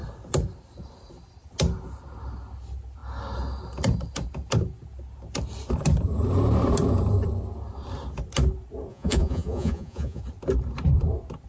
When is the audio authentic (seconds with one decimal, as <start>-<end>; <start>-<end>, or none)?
0.0-8.9; 10.2-11.5